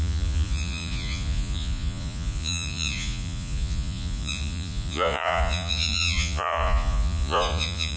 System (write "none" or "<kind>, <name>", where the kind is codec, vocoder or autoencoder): vocoder, Vocos